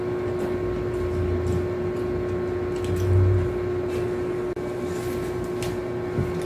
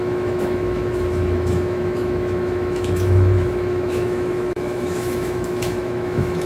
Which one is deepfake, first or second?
second